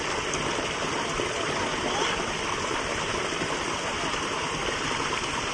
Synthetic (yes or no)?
no